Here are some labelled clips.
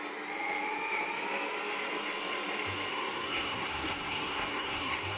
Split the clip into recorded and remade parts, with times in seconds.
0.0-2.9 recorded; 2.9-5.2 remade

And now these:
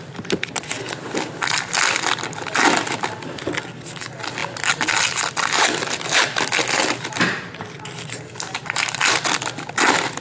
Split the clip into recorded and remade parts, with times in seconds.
0.0-10.2 recorded